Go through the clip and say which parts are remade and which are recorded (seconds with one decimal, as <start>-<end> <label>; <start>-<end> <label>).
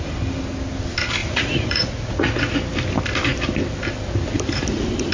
0.0-1.2 recorded; 1.2-2.4 remade; 2.4-5.1 recorded